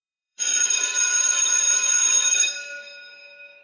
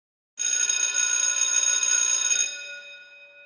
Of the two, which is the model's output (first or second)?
first